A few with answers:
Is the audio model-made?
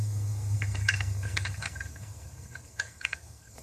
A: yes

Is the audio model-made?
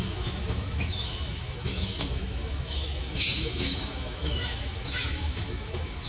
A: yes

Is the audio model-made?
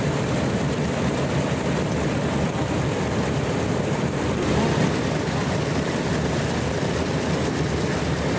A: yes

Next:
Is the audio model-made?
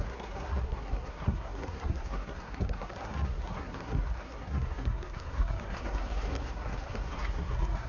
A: yes